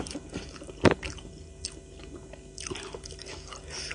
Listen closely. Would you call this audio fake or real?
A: real